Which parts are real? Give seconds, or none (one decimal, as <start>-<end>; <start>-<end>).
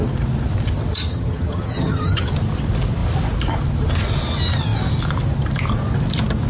0.0-1.1; 2.3-6.5